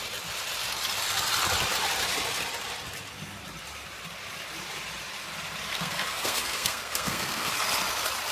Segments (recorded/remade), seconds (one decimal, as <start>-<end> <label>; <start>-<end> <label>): 0.0-5.7 recorded; 5.7-7.5 remade; 7.5-8.3 recorded